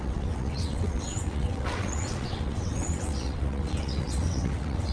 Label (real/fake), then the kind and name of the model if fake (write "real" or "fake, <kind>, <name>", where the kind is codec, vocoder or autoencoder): fake, vocoder, WaveNeXt